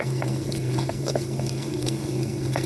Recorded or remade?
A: remade